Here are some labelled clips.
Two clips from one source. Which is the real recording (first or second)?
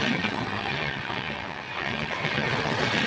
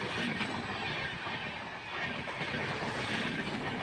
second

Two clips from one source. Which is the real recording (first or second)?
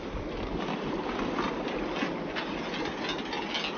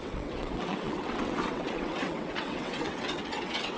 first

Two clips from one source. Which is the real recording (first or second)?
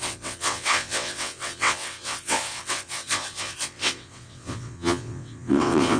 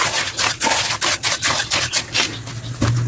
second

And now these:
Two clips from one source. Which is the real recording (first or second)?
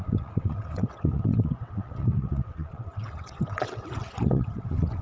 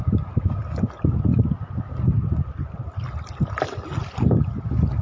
second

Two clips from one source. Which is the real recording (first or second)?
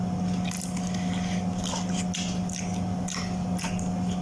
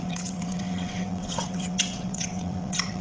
first